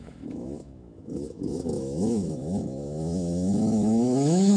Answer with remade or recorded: remade